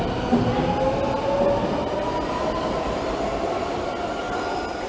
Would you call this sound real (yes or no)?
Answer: yes